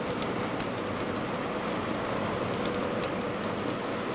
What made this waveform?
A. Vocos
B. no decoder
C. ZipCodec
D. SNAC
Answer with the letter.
B